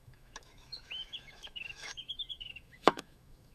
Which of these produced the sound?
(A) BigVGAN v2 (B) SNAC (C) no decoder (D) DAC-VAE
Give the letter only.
D